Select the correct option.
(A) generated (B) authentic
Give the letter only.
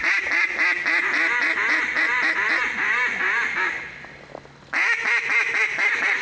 B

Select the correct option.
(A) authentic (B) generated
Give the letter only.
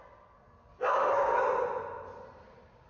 A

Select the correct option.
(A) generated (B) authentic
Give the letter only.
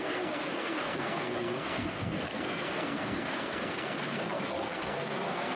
A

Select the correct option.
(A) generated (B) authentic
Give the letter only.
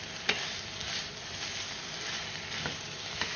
B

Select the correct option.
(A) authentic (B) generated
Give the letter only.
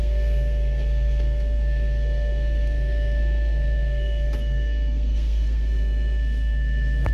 B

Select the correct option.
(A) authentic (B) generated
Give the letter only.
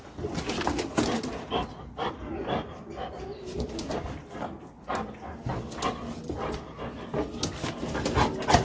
A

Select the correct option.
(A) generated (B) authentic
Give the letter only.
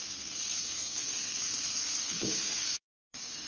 A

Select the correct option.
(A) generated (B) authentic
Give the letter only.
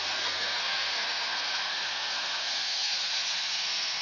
A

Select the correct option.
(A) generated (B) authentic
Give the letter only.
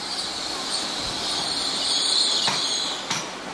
B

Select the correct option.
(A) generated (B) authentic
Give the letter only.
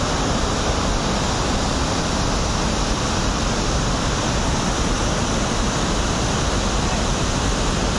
B